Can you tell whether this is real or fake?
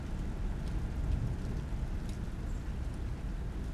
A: real